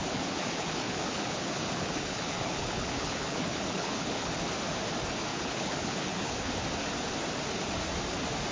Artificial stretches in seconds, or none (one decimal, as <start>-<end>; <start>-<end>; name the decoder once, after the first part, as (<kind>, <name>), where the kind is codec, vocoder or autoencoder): 0.0-4.3 (codec, HILCodec); 5.3-6.5